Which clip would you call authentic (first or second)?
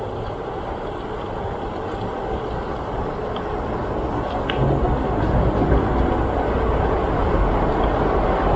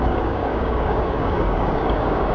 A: first